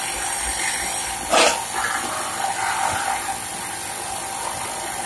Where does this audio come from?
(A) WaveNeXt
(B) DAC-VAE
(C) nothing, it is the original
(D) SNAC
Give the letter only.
C